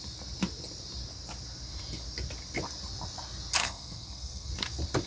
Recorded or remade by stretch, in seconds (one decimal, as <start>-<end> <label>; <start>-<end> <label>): 0.0-3.6 recorded; 3.6-4.5 remade; 4.5-5.1 recorded